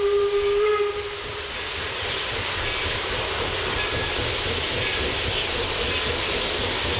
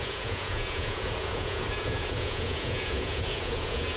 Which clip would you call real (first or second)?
first